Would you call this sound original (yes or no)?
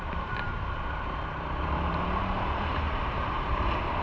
no